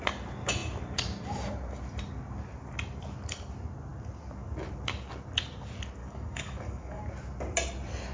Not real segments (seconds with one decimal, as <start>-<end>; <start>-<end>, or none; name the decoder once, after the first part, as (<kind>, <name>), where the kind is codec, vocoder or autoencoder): 6.0-7.0 (codec, DAC)